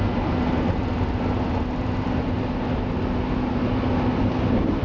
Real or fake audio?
real